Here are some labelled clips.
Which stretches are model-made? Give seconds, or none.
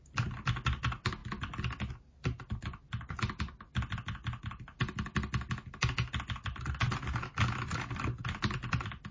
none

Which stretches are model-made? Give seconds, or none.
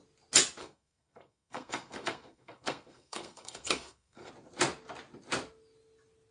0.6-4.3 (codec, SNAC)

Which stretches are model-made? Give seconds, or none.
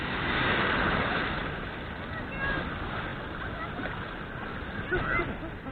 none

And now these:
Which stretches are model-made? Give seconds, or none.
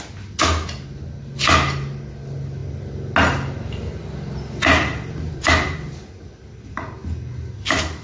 none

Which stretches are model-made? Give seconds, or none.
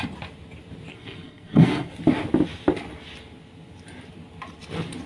0.9-1.9 (codec, SNAC)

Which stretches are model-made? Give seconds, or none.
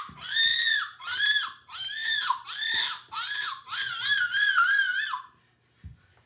none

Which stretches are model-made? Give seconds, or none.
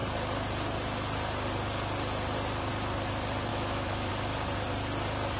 3.5-4.1 (autoencoder, DAC-VAE)